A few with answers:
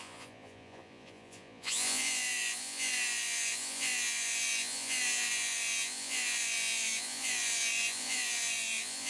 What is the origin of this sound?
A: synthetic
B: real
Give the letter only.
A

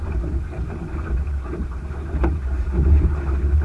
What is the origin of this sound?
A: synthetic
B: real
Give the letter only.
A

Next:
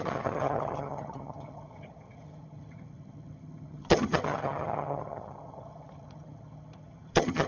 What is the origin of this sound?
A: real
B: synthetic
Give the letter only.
B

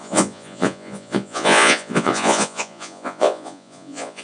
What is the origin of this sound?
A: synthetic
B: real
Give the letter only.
A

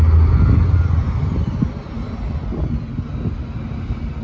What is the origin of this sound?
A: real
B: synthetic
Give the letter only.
A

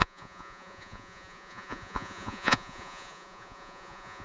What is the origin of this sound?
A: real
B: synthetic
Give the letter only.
B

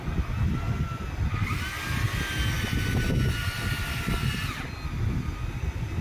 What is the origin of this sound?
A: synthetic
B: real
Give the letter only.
B